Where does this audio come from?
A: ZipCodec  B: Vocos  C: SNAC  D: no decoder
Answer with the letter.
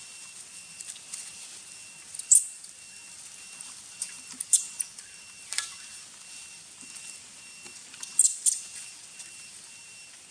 D